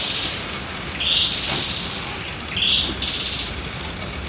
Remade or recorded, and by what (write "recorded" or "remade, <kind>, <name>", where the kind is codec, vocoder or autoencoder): recorded